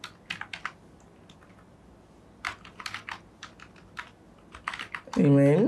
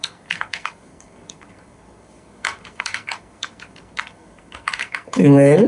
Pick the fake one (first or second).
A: second